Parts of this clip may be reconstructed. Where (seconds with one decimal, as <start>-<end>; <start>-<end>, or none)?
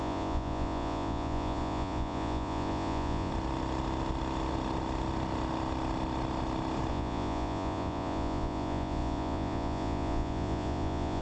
0.0-3.3; 6.9-11.2